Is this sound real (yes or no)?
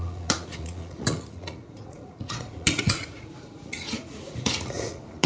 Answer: no